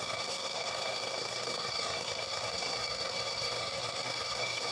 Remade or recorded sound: remade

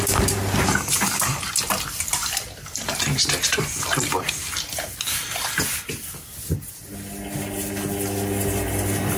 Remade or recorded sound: recorded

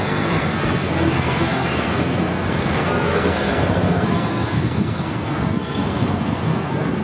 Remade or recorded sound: remade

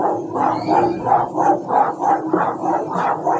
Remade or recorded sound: recorded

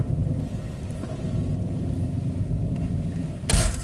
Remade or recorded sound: recorded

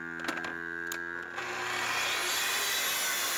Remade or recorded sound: recorded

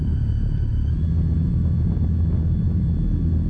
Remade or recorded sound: recorded